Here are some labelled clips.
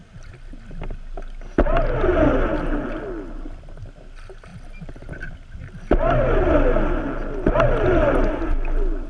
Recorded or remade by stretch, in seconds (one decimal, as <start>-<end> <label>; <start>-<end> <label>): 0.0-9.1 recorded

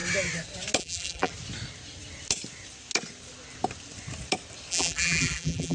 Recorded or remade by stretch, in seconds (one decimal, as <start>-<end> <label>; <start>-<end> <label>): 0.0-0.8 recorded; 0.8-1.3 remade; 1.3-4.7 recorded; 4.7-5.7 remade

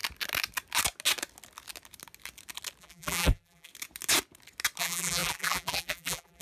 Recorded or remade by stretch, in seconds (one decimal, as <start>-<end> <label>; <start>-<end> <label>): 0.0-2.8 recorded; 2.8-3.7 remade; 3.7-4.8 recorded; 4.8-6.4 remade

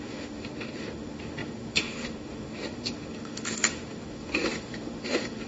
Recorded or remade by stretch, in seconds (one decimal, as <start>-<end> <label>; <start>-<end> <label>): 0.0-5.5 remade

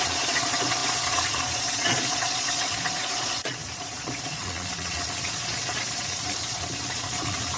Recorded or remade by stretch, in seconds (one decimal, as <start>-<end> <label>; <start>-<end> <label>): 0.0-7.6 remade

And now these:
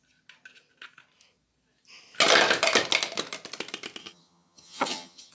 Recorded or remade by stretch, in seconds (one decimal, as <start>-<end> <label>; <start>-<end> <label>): 0.0-4.0 recorded; 4.0-5.3 remade

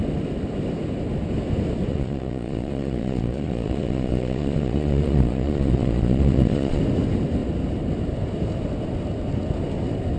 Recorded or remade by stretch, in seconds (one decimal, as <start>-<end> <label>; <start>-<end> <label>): 0.0-1.9 recorded; 1.9-6.8 remade; 6.8-10.2 recorded

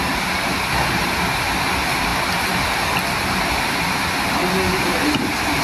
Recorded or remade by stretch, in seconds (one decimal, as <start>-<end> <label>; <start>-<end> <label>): 0.0-5.6 recorded